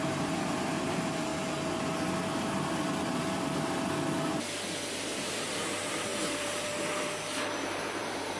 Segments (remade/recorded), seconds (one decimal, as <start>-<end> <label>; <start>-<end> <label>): 0.0-1.3 remade; 1.3-4.9 recorded; 4.9-8.4 remade